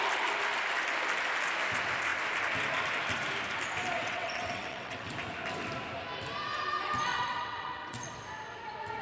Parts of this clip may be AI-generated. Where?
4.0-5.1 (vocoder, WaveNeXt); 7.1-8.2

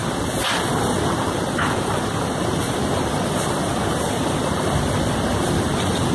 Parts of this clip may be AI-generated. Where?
2.5-6.1 (vocoder, BigVGAN v2)

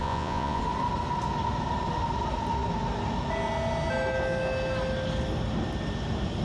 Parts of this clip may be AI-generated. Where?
0.0-0.6 (vocoder, Vocos)

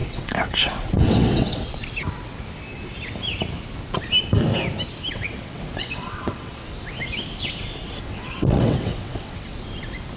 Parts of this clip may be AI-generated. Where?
0.0-1.8 (vocoder, WaveNeXt); 5.1-6.6; 7.4-9.5

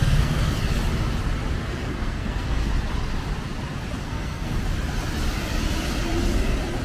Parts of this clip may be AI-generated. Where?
0.0-0.6 (codec, SNAC); 1.7-2.7; 4.0-4.6

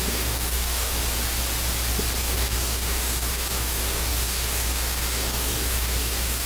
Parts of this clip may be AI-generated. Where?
0.0-1.0 (codec, DAC); 2.2-6.5